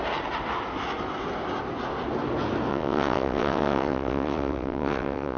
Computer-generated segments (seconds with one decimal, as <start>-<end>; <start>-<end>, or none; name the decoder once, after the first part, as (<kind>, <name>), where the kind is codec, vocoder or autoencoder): 2.7-5.4 (vocoder, WaveNeXt)